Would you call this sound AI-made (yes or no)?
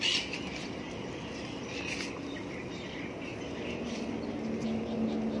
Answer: no